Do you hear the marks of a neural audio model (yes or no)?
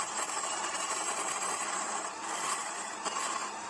yes